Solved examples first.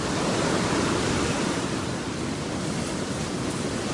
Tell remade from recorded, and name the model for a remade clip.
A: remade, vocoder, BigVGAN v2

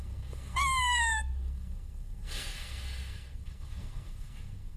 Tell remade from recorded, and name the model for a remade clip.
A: remade, codec, SNAC